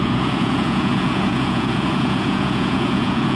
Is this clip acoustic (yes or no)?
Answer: no